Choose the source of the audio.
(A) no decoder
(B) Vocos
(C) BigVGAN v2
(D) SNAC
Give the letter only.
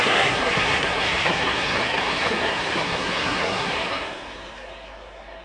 D